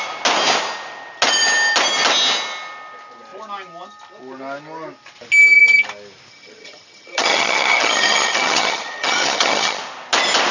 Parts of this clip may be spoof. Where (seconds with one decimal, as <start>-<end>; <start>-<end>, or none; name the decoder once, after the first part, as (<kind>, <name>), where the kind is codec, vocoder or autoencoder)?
6.3-9.8 (vocoder, HiFi-GAN)